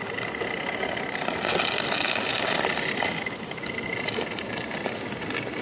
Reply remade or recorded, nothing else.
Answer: recorded